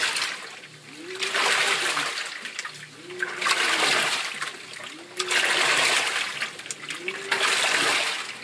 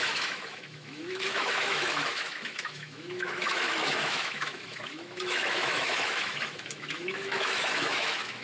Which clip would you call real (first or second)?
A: first